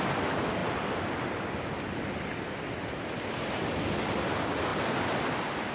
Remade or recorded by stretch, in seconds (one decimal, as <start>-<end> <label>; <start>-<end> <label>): 0.0-5.7 recorded